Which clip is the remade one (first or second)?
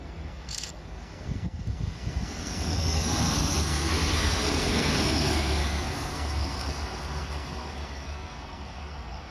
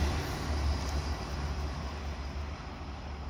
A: first